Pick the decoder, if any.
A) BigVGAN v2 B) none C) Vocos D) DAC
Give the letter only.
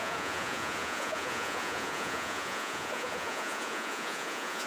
C